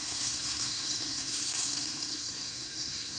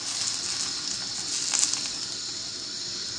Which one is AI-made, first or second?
first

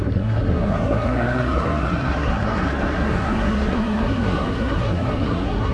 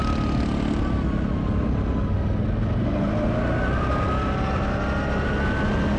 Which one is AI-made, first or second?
first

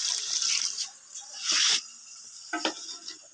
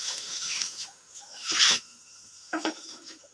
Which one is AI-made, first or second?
second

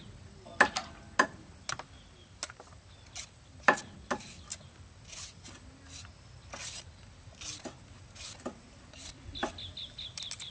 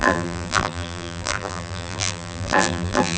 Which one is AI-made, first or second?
second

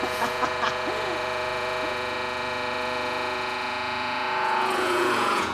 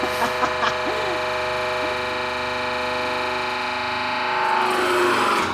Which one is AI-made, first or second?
first